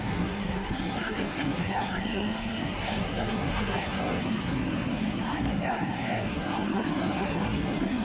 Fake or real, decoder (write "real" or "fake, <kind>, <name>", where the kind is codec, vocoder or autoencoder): fake, codec, SNAC